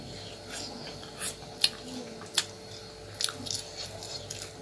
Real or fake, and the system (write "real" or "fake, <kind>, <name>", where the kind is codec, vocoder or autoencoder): real